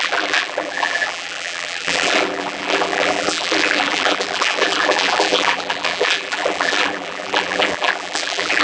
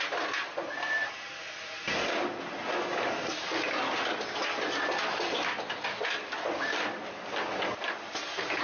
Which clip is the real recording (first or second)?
second